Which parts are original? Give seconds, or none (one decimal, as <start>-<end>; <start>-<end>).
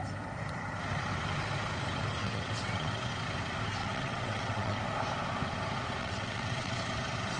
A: 0.0-2.2; 3.1-3.8; 4.8-6.0; 6.8-7.4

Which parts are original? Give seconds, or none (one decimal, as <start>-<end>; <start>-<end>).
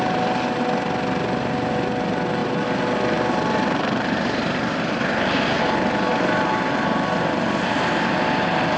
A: 0.0-8.8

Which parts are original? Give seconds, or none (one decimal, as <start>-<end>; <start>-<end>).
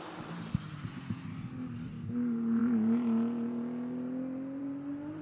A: 0.0-5.2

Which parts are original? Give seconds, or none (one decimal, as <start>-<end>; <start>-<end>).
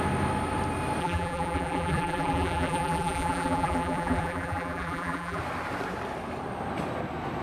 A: 0.0-1.0; 5.4-7.4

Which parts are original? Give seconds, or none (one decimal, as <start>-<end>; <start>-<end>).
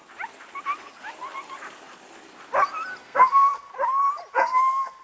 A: 0.0-3.0; 3.7-4.3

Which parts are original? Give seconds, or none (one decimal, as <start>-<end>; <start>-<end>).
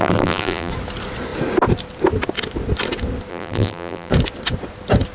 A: 0.7-3.3; 4.1-5.1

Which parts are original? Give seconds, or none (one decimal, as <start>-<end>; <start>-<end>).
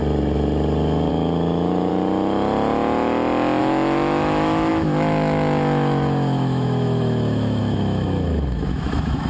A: 0.0-1.1; 1.9-3.6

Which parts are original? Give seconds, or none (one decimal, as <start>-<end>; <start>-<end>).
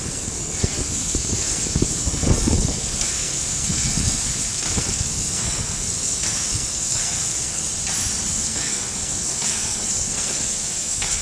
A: 7.6-8.3